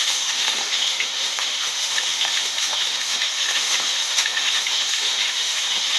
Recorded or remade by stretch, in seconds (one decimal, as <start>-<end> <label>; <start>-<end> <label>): 0.0-6.0 remade